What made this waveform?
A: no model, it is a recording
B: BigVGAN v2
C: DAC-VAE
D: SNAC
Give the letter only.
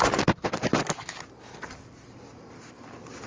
B